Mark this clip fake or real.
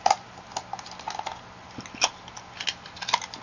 real